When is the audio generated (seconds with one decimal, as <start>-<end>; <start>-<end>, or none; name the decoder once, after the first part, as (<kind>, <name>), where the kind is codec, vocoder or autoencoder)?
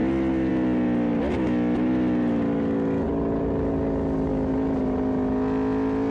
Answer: none